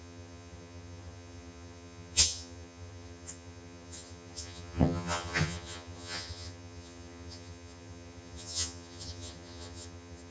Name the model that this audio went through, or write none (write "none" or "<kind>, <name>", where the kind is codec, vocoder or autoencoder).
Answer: vocoder, HiFi-GAN